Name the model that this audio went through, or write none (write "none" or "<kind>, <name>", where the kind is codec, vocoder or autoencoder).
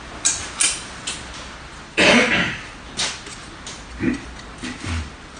none